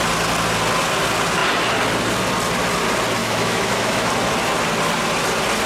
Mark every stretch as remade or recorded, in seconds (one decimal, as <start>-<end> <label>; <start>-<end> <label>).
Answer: 0.0-3.2 recorded; 3.2-4.1 remade; 4.1-5.7 recorded